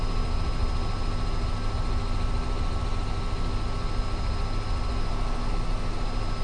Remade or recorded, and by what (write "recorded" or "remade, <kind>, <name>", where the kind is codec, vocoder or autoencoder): recorded